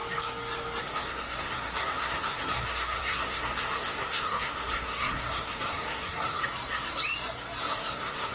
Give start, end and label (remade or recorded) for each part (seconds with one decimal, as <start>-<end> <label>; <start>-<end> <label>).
0.0-0.8 recorded; 0.8-6.4 remade; 6.4-7.6 recorded; 7.6-8.3 remade